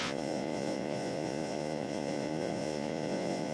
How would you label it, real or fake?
fake